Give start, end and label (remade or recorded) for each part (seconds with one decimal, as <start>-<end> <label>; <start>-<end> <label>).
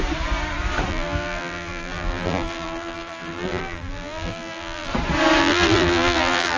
0.0-0.9 recorded; 0.9-4.9 remade; 4.9-5.4 recorded; 5.4-6.6 remade